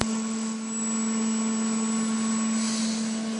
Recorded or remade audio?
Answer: recorded